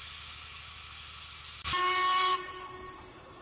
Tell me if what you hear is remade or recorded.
recorded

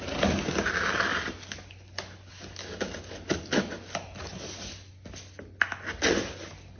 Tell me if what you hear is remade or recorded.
recorded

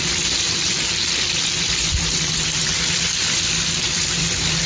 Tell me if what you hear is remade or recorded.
remade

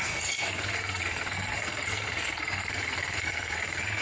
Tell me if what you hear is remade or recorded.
remade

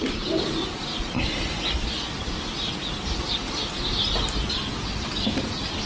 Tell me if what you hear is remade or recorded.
recorded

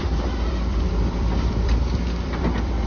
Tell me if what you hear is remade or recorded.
remade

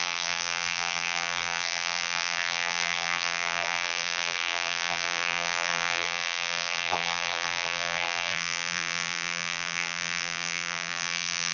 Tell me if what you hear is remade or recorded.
remade